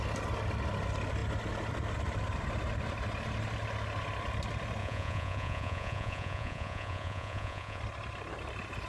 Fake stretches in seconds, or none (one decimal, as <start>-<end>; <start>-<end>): 4.8-7.8

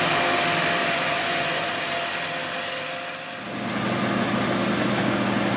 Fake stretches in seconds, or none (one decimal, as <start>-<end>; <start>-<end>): 0.8-1.7

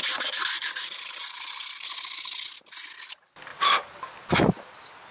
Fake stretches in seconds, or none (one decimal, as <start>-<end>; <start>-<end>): none

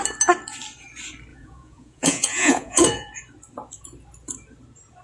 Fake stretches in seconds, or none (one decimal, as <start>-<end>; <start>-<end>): 1.3-3.1

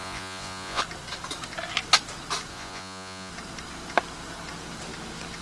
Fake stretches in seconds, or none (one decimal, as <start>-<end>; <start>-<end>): 0.0-0.8; 2.5-3.3

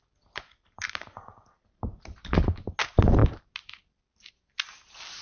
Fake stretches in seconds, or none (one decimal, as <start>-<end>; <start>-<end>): none

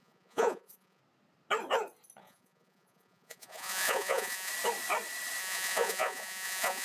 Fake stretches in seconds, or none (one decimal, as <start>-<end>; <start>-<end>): 0.0-1.0; 2.2-4.5; 5.4-6.8